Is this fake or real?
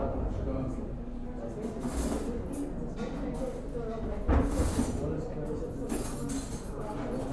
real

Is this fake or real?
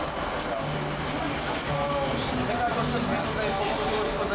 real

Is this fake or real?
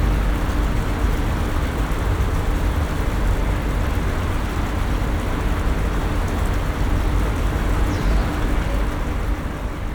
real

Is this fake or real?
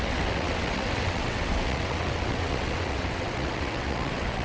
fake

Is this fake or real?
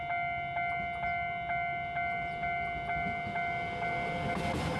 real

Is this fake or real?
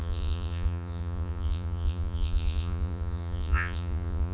fake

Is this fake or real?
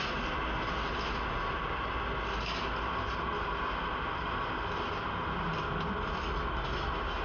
real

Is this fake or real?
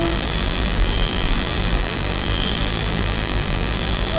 fake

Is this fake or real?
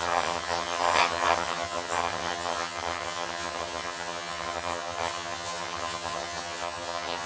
fake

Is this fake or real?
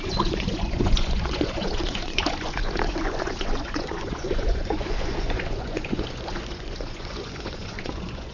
fake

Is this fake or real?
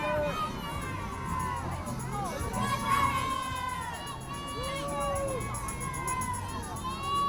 real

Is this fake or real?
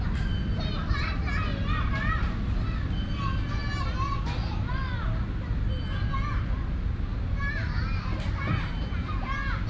real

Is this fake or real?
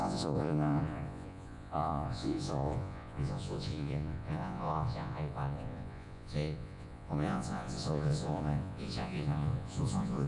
fake